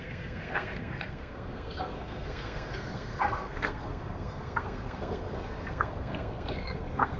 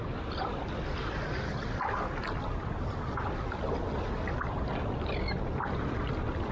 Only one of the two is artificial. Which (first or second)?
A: first